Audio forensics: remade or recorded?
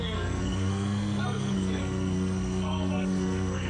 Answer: remade